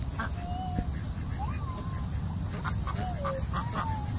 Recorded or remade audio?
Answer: recorded